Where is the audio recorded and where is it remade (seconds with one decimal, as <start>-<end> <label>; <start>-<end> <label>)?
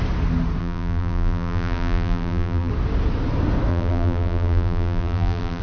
0.0-0.6 recorded; 0.6-2.7 remade; 2.7-3.7 recorded; 3.7-5.6 remade